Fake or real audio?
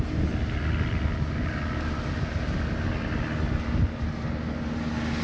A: real